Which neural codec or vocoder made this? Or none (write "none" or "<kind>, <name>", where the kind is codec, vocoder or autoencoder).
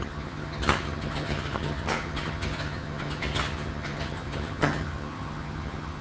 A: vocoder, HiFi-GAN